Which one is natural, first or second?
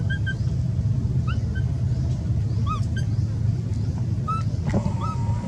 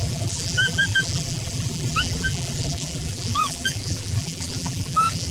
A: first